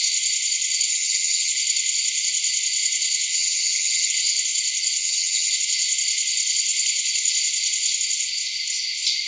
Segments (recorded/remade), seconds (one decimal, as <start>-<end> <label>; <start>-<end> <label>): 0.0-0.9 recorded; 0.9-1.5 remade; 1.5-3.3 recorded; 3.3-4.1 remade; 4.1-5.0 recorded; 5.0-5.5 remade; 5.5-9.3 recorded